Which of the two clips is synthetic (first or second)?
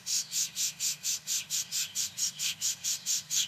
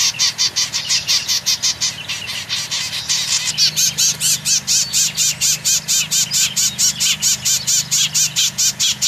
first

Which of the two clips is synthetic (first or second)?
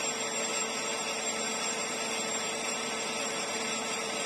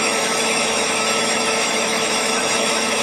second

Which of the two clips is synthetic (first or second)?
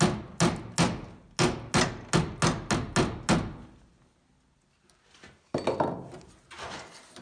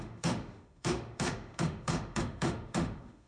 second